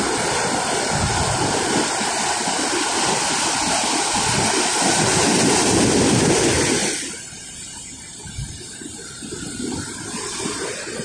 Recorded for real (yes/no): yes